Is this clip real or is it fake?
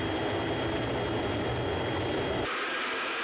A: real